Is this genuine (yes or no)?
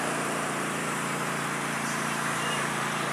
no